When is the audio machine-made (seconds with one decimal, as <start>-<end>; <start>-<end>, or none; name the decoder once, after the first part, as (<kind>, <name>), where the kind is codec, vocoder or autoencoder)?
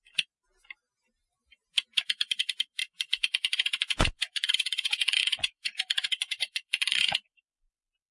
2.8-8.1 (vocoder, Vocos)